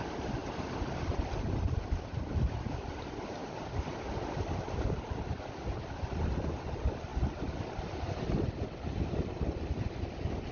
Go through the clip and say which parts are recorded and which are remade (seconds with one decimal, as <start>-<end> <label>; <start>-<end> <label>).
0.0-3.4 recorded; 3.4-5.3 remade; 5.3-10.5 recorded